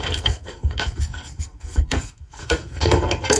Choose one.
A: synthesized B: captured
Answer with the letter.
A